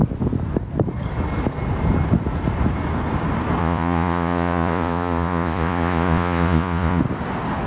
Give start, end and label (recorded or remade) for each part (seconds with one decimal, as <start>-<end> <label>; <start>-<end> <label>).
0.0-3.6 recorded; 3.6-7.0 remade; 7.0-7.7 recorded